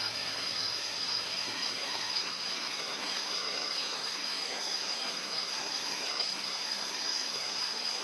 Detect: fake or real fake